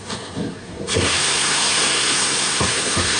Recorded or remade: remade